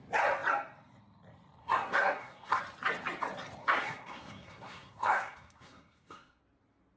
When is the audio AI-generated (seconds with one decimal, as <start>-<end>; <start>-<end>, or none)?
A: 1.6-2.6; 3.6-6.4